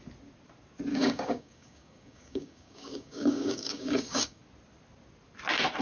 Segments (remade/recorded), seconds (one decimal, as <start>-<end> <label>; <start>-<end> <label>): 0.0-0.9 recorded; 0.9-4.4 remade; 4.4-5.8 recorded